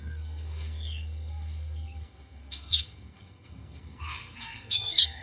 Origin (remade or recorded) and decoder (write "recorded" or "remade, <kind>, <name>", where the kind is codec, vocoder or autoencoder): remade, codec, SNAC